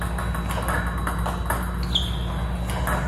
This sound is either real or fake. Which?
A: real